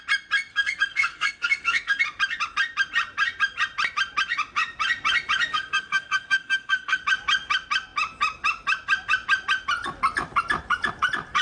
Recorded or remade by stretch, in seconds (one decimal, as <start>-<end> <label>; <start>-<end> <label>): 0.0-0.5 recorded; 0.5-2.0 remade; 2.0-5.5 recorded; 5.5-7.0 remade; 7.0-11.4 recorded